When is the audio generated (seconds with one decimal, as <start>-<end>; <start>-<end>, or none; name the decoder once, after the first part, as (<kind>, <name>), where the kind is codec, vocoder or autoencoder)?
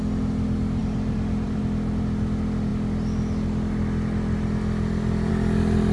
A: 0.8-1.6 (vocoder, BigVGAN v2)